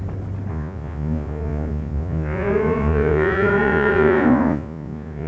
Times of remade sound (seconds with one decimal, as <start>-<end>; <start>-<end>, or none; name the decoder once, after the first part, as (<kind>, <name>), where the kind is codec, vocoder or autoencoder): 0.5-5.3 (vocoder, Vocos)